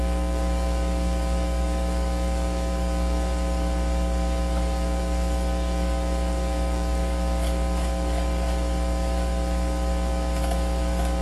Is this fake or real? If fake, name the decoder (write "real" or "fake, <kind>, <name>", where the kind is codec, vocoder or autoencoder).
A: fake, codec, DAC